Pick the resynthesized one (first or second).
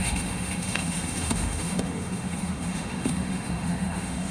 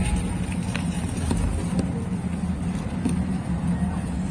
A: first